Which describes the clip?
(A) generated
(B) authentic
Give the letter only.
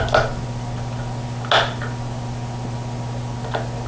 B